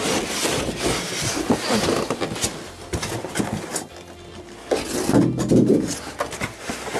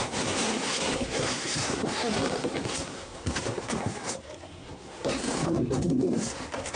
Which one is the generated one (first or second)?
second